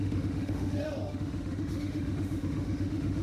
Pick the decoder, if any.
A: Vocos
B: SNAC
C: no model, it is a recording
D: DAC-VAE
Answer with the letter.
D